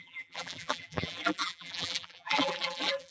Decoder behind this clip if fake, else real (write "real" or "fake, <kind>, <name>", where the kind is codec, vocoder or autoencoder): fake, vocoder, BigVGAN v2